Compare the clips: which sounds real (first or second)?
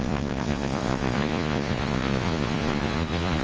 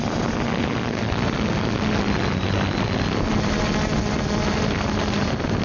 second